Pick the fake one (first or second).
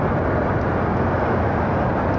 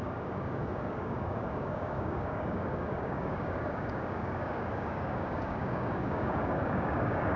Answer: second